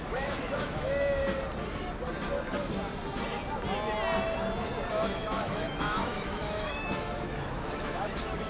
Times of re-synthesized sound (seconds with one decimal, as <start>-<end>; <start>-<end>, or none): 0.0-1.2; 4.9-8.5